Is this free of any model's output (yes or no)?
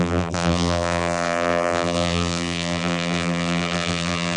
no